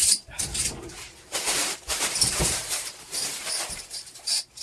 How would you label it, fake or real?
fake